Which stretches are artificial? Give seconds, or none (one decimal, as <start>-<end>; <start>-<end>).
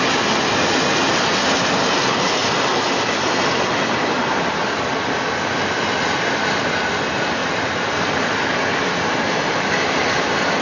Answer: 7.4-10.2